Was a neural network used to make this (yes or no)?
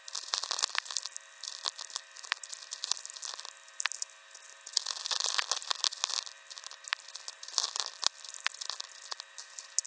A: no